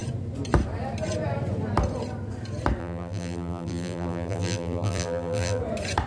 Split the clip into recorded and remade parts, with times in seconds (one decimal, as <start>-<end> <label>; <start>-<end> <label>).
0.0-2.8 recorded; 2.8-5.6 remade; 5.6-6.1 recorded